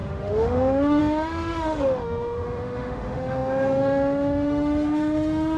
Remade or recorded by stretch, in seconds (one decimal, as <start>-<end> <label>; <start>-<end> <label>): 0.0-5.6 remade